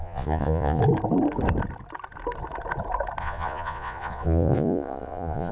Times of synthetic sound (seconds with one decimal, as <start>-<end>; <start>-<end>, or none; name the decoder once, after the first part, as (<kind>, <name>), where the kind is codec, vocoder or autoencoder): 0.0-0.8 (vocoder, Vocos); 3.2-5.5